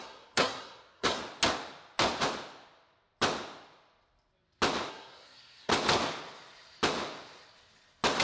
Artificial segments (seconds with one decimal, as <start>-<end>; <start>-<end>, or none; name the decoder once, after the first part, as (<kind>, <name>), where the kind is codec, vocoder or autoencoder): 0.0-1.2 (codec, SNAC); 4.9-5.7